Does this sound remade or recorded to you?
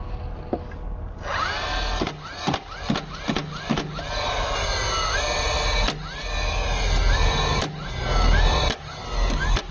recorded